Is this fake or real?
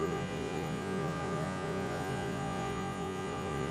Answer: fake